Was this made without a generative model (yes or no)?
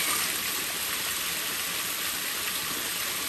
yes